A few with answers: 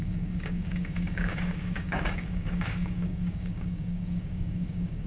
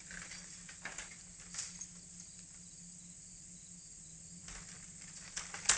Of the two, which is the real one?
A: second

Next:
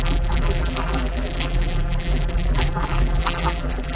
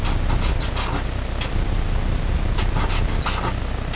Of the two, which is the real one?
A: second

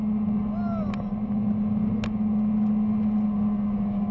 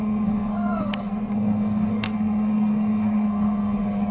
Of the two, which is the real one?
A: first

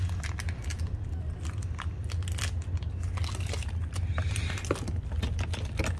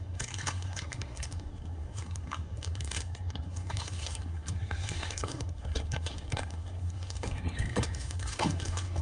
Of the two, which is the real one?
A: first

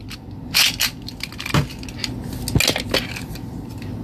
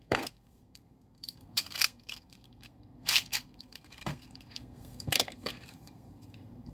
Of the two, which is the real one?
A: first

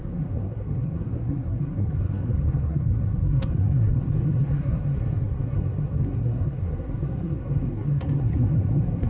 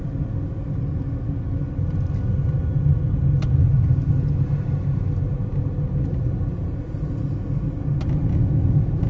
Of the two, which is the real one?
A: second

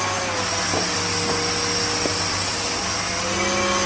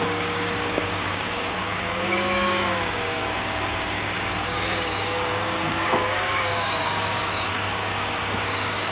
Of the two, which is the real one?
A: first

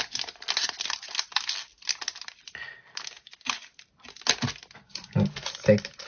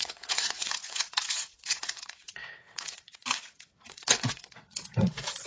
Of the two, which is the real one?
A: first